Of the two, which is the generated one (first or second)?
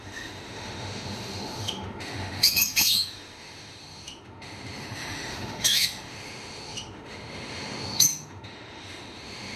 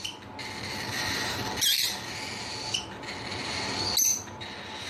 first